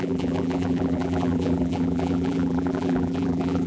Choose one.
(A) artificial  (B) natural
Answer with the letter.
A